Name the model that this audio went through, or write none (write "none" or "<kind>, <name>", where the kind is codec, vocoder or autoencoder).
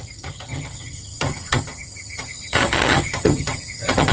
vocoder, HiFi-GAN